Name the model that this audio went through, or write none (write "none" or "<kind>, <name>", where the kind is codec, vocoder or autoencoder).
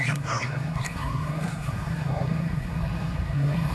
codec, SNAC